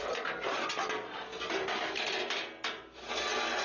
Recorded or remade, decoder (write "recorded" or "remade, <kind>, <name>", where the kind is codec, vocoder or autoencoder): recorded